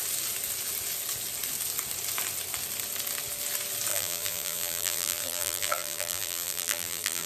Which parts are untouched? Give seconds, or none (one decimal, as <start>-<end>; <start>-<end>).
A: 0.0-3.9